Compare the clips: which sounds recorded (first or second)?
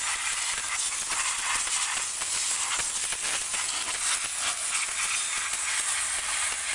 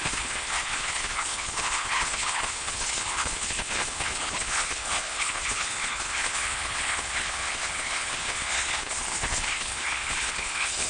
first